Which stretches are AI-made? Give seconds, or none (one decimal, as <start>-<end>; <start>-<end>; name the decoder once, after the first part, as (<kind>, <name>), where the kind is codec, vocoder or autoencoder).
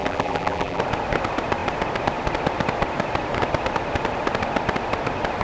0.0-0.8 (vocoder, BigVGAN v2)